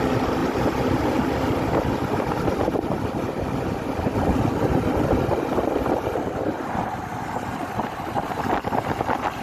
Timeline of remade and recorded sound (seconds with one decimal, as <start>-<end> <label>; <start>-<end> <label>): 0.0-9.4 recorded